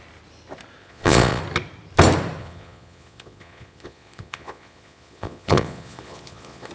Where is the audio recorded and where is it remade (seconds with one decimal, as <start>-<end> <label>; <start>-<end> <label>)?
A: 0.0-0.8 recorded; 0.8-1.4 remade; 1.4-2.4 recorded; 2.4-6.7 remade